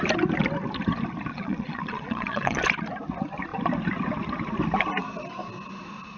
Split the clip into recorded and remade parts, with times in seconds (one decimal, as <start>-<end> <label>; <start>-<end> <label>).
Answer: 0.0-1.3 recorded; 1.3-2.6 remade; 2.6-6.2 recorded